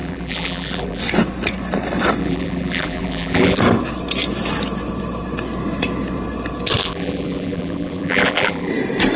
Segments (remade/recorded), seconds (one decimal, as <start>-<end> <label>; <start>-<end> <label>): 0.0-1.0 remade; 1.0-2.2 recorded; 2.2-3.6 remade; 3.6-6.8 recorded; 6.8-8.7 remade; 8.7-9.2 recorded